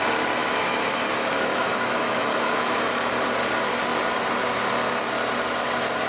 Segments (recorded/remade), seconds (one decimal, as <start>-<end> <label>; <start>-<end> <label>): 0.0-0.4 recorded; 0.4-2.7 remade; 2.7-6.1 recorded